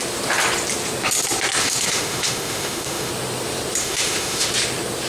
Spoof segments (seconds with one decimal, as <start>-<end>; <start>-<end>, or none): 1.6-3.1; 3.8-4.5